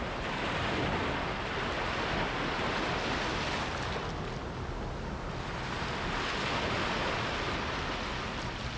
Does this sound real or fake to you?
real